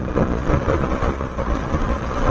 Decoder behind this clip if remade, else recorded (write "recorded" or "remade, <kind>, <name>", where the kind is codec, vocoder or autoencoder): remade, vocoder, Vocos